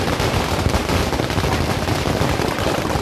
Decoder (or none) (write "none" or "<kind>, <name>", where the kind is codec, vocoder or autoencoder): none